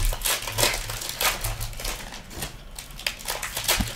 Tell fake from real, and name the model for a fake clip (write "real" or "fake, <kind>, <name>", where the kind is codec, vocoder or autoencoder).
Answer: real